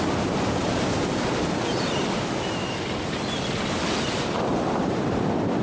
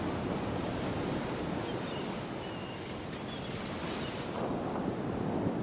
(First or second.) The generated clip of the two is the first